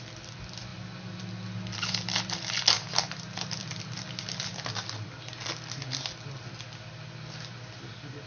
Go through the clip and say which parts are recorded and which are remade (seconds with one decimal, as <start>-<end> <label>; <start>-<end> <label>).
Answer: 0.0-8.3 recorded